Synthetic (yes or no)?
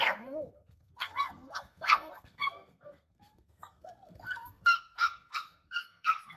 yes